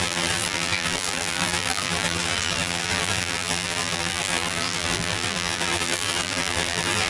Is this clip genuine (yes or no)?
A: no